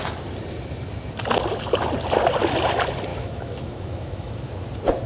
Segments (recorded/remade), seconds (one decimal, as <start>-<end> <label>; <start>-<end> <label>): 0.0-3.1 recorded; 3.1-4.5 remade; 4.5-5.1 recorded

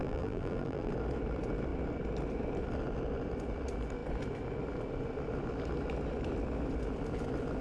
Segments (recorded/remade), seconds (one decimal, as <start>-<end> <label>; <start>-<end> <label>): 0.0-0.9 remade; 0.9-7.6 recorded

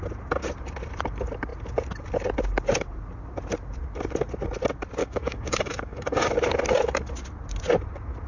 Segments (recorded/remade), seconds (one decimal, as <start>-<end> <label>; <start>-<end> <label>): 0.0-5.0 recorded; 5.0-6.3 remade; 6.3-8.3 recorded

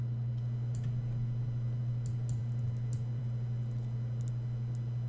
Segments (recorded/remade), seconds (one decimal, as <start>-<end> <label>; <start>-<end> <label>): 0.0-5.1 recorded